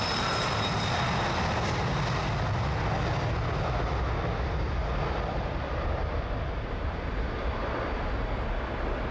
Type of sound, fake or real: real